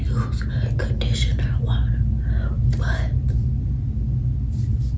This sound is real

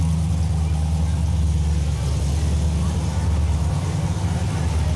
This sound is real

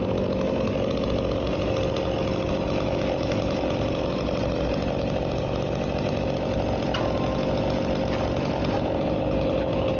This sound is real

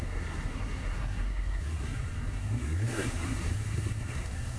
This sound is fake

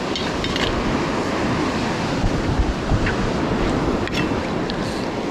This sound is real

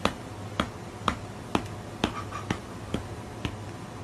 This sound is real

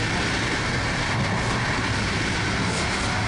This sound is real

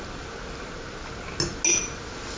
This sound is real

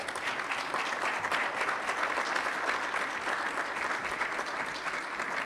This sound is real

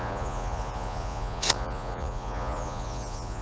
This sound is fake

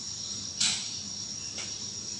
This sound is fake